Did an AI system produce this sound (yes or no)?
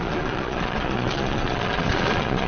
yes